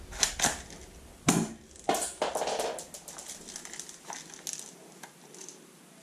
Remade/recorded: recorded